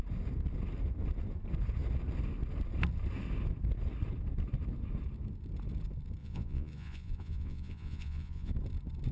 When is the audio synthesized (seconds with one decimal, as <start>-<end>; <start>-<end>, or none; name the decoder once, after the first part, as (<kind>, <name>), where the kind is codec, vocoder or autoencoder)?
6.2-8.5 (vocoder, Vocos)